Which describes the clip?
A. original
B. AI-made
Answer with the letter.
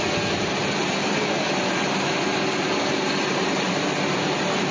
A